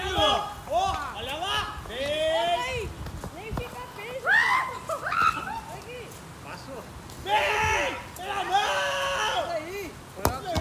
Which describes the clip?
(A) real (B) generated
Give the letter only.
A